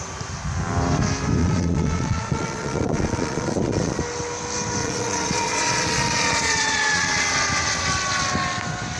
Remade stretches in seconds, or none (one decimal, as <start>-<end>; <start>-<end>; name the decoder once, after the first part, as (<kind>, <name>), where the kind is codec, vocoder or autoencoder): 1.4-4.0 (vocoder, Vocos); 4.8-7.2